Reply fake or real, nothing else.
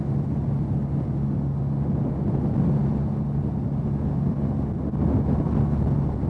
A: real